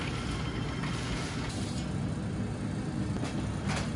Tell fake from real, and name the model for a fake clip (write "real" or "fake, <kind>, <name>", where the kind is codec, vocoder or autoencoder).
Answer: real